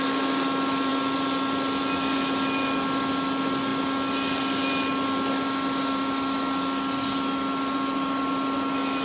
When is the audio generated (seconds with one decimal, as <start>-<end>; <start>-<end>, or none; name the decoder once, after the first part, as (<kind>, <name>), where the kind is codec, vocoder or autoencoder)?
none